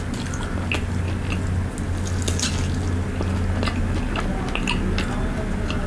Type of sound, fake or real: real